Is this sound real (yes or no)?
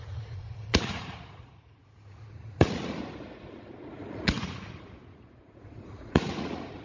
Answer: no